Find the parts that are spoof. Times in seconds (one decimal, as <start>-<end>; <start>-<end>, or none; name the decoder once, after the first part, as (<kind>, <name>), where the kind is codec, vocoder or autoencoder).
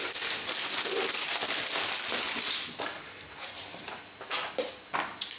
none